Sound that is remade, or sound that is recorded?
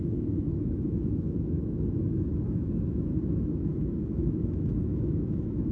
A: remade